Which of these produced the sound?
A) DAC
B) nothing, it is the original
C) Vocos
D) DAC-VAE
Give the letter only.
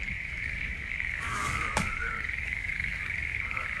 A